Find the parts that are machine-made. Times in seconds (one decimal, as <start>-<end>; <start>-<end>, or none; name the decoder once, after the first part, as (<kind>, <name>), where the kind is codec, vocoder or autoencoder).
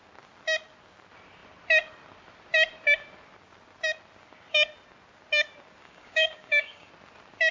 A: 5.8-6.9 (codec, DAC)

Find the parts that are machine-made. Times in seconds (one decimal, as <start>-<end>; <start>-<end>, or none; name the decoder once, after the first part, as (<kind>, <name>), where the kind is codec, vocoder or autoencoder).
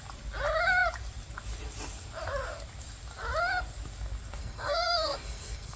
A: 4.4-5.8 (codec, SNAC)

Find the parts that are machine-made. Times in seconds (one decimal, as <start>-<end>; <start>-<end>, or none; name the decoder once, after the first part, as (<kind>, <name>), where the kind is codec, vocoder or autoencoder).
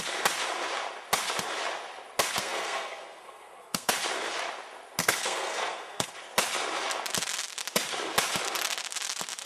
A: 2.4-3.9 (codec, SNAC); 5.0-6.1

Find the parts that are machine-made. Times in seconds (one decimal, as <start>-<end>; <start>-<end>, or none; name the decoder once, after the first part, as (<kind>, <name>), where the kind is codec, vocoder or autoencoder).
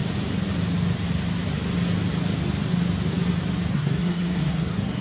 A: 3.7-5.0 (codec, SNAC)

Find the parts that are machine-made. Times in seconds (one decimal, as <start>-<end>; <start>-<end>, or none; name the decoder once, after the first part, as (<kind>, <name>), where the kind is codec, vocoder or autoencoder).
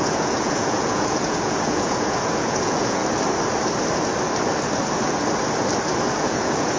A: 0.0-3.0 (vocoder, Vocos); 6.1-6.8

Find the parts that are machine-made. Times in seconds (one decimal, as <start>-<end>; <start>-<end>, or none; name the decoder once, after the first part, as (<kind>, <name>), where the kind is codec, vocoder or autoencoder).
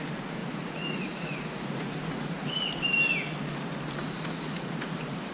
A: 0.4-2.5 (vocoder, Vocos); 4.0-5.3